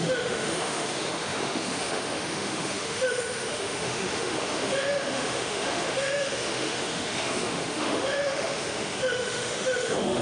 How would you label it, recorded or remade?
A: remade